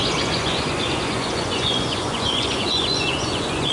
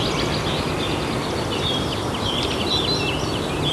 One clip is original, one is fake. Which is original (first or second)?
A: second